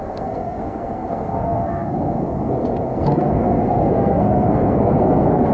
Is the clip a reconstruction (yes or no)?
yes